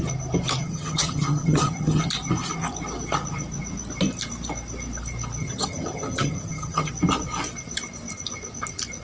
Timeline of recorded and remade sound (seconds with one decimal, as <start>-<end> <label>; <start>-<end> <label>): 0.0-0.6 recorded; 0.6-2.0 remade; 2.0-5.4 recorded; 5.4-6.9 remade; 6.9-9.0 recorded